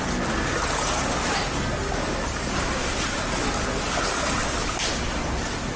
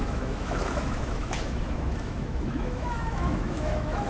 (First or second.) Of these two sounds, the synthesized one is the second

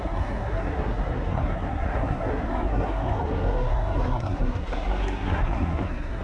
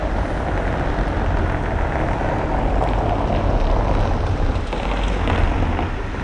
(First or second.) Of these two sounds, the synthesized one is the first